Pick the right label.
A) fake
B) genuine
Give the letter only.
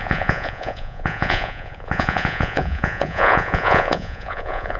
A